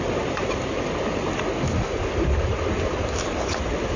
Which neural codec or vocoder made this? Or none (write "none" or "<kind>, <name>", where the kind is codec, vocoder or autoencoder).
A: none